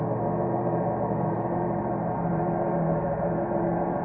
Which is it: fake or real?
fake